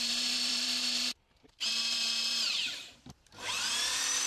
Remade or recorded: remade